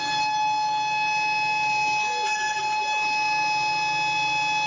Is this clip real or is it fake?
real